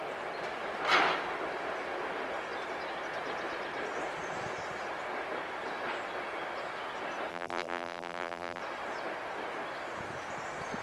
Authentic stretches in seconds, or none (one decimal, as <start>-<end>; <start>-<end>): 0.0-7.3; 8.6-10.8